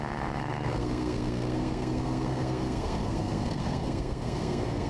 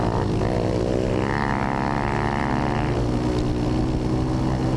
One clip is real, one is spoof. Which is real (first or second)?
second